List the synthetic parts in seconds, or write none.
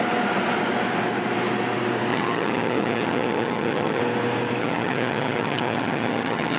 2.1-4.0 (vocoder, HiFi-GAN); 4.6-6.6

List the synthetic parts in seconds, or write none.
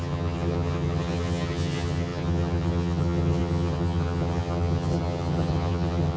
0.0-6.2 (vocoder, HiFi-GAN)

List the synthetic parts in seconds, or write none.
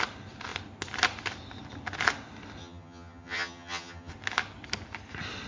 2.6-4.1 (vocoder, HiFi-GAN)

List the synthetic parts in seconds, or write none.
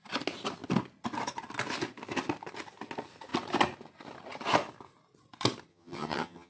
5.7-6.5 (vocoder, HiFi-GAN)